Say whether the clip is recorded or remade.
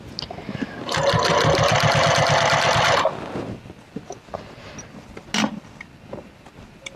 recorded